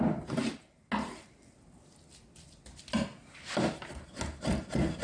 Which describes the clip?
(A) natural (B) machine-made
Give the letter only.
A